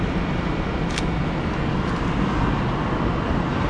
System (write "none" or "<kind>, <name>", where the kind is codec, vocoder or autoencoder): none